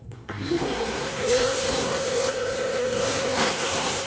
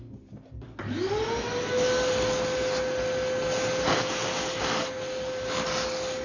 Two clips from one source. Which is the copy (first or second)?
first